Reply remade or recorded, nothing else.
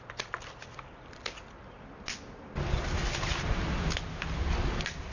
recorded